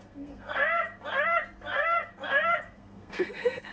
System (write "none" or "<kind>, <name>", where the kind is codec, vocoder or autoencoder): codec, SNAC